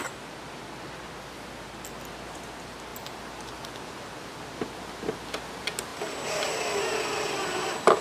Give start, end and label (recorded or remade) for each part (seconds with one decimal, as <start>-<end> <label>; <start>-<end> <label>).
0.0-8.0 recorded